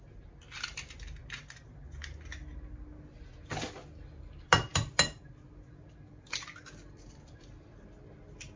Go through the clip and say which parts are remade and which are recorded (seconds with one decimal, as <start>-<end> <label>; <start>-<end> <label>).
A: 0.0-8.6 recorded